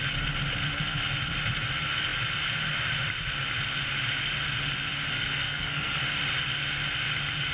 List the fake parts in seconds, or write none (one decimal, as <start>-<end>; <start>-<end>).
5.1-6.0